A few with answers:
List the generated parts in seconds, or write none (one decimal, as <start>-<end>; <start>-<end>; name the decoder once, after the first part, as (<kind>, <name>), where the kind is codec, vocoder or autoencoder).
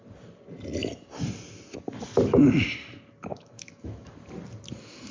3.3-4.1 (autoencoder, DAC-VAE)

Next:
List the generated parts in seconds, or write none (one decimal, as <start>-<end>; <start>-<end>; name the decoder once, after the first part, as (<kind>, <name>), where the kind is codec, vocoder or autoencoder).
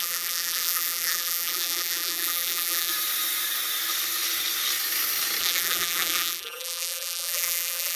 0.0-2.9 (vocoder, BigVGAN v2); 5.4-8.0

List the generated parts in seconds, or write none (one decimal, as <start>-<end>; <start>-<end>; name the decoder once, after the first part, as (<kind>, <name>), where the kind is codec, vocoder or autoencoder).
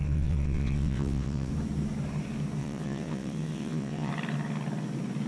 0.0-1.5 (vocoder, WaveNeXt); 2.6-4.1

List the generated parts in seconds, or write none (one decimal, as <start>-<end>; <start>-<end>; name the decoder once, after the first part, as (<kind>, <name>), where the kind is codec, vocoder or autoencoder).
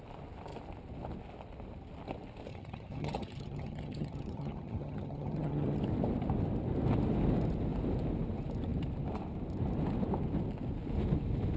2.5-5.8 (vocoder, HiFi-GAN)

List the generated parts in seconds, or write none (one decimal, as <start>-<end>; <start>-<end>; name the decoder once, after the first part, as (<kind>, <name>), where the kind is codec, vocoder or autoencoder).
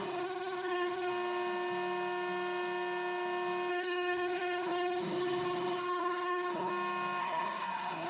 0.0-1.1 (codec, SNAC); 3.7-6.7; 7.2-8.1